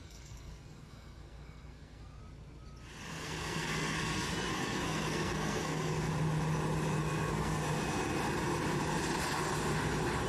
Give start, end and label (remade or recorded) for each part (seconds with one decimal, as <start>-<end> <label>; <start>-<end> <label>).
0.0-2.2 remade; 2.2-3.1 recorded; 3.1-6.1 remade; 6.1-7.0 recorded; 7.0-7.6 remade; 7.6-10.3 recorded